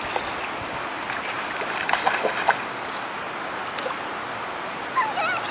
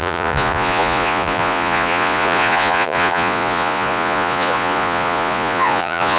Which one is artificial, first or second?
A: second